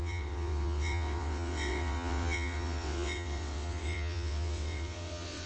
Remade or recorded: remade